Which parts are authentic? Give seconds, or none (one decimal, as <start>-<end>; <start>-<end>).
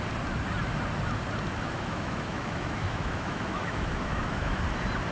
0.0-1.5; 4.6-5.1